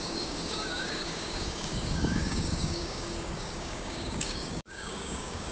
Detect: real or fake fake